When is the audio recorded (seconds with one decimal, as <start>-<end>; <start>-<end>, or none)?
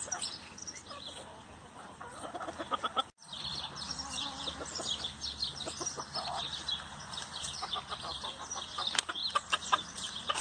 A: 0.0-10.4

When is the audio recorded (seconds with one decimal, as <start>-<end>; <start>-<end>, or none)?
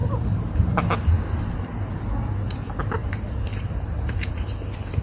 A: 0.8-3.0; 4.3-5.0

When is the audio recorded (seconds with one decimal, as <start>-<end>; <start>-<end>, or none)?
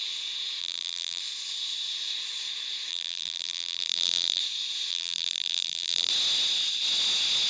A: 0.0-0.6; 1.2-2.9; 4.4-4.9; 6.1-7.5